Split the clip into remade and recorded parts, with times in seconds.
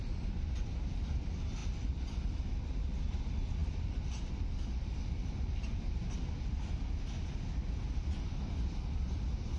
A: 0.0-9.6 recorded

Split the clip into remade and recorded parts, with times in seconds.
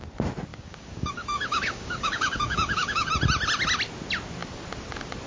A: 0.0-0.5 recorded; 0.5-3.1 remade; 3.1-5.3 recorded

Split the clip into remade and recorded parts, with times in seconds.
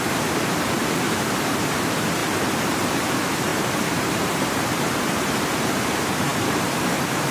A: 0.0-7.3 remade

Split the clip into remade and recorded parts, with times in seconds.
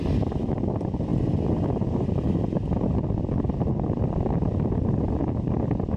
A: 0.0-6.0 recorded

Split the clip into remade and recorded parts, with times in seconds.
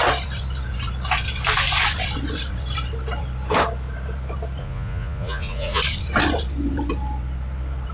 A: 0.0-4.6 recorded; 4.6-5.8 remade; 5.8-7.9 recorded